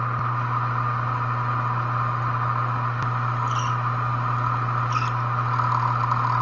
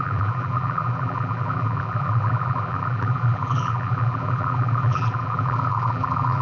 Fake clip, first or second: second